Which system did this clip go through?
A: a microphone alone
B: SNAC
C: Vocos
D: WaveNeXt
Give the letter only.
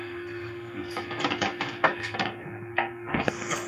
B